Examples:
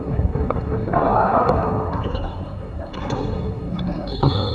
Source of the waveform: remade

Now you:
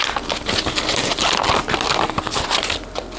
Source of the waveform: recorded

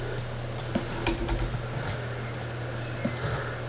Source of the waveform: recorded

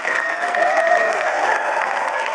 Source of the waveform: remade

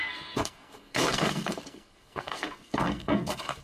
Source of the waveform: remade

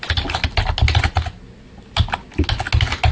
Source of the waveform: recorded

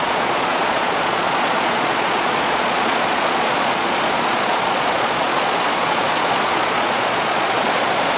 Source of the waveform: remade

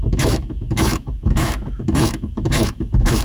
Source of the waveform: remade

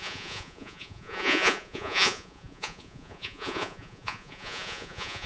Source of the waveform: remade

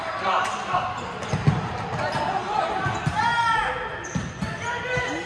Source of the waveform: recorded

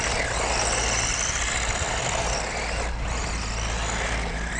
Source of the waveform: recorded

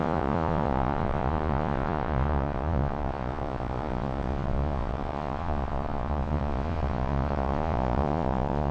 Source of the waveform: remade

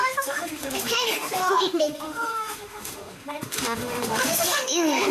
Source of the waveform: remade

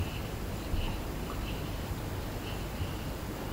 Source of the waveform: recorded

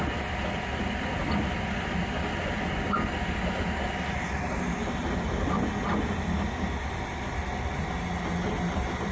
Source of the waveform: recorded